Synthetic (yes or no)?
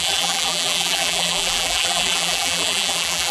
yes